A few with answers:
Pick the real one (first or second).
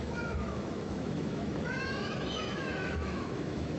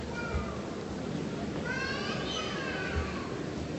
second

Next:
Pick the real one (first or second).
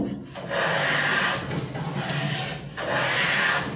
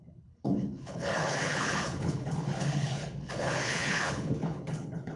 first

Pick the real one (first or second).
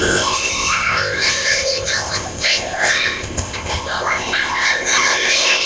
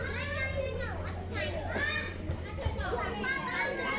second